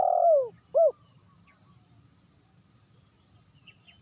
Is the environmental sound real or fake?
real